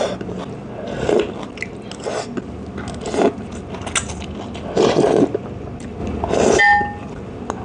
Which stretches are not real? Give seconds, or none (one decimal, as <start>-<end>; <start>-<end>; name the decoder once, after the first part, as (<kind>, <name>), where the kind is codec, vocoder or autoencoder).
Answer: none